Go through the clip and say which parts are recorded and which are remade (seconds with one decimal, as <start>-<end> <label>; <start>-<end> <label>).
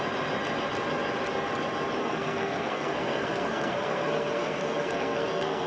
0.0-2.0 recorded; 2.0-5.7 remade